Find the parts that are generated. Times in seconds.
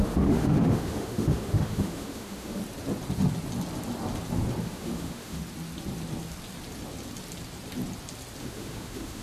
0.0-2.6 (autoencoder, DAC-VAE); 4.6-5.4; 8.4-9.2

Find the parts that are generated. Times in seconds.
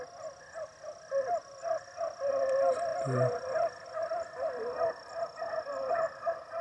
none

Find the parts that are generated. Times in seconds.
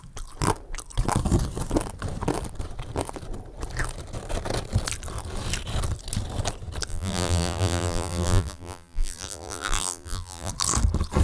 6.9-10.5 (vocoder, BigVGAN v2)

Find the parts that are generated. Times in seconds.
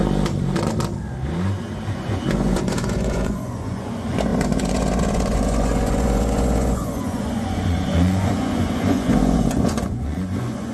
1.9-10.7 (vocoder, Vocos)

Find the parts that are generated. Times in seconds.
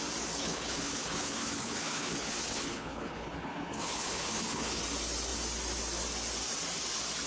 0.4-4.8 (codec, HILCodec)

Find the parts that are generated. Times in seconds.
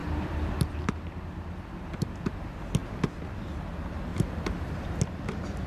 0.0-1.7 (vocoder, BigVGAN v2); 4.1-5.0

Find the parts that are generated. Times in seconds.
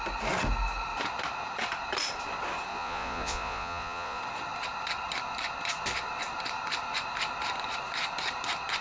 2.7-4.2 (vocoder, Vocos)